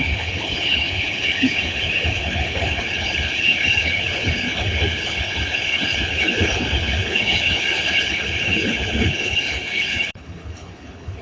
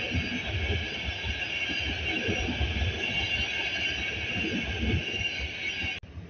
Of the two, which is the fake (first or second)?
first